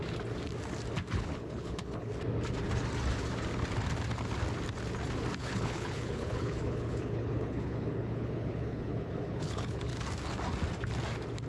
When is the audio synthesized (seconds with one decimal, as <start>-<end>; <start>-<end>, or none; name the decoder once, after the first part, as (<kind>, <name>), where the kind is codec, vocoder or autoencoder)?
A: 1.1-2.1 (codec, HILCodec); 5.4-9.9